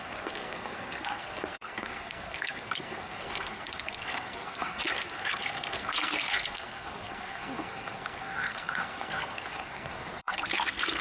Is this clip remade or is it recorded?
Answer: remade